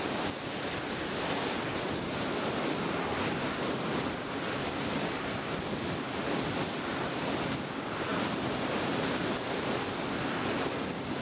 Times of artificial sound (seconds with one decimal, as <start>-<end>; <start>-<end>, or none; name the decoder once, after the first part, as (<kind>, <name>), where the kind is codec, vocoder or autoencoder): none